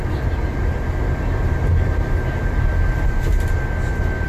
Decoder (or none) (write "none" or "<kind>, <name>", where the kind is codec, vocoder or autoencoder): none